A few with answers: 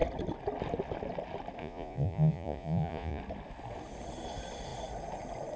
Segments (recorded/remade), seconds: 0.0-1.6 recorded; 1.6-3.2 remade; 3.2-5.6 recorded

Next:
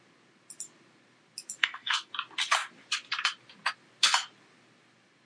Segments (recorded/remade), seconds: 0.0-1.6 recorded; 1.6-2.1 remade; 2.1-5.3 recorded

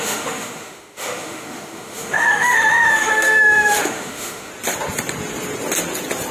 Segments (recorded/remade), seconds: 0.0-4.5 remade; 4.5-6.3 recorded

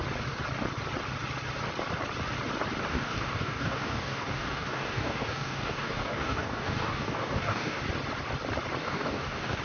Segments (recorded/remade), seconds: 0.0-2.9 recorded; 2.9-7.8 remade; 7.8-8.8 recorded; 8.8-9.6 remade

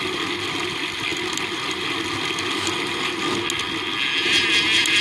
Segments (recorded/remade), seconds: 0.0-5.0 recorded

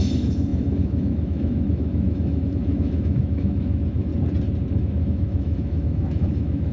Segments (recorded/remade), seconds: 0.0-4.1 remade; 4.1-4.7 recorded; 4.7-6.7 remade

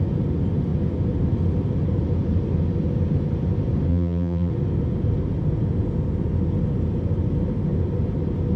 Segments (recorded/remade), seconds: 0.0-3.9 recorded; 3.9-4.5 remade; 4.5-8.6 recorded